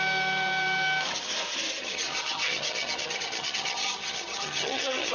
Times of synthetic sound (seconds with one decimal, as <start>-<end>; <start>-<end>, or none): 1.8-5.1